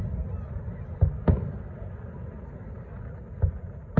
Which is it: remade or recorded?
recorded